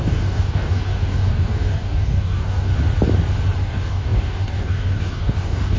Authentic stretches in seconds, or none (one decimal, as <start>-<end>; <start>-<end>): 2.7-3.6